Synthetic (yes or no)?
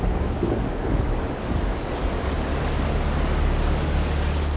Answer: yes